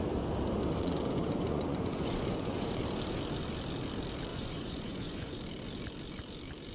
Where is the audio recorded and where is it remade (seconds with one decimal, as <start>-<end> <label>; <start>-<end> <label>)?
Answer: 0.0-0.8 recorded; 0.8-2.8 remade; 2.8-4.3 recorded; 4.3-5.4 remade; 5.4-6.7 recorded